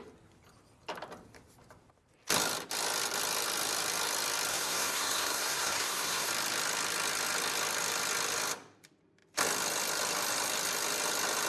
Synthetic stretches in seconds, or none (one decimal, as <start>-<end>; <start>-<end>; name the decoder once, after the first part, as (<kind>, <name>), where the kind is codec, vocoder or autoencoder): 4.5-6.3 (codec, SNAC)